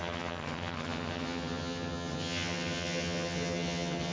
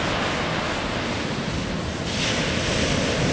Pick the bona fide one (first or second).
second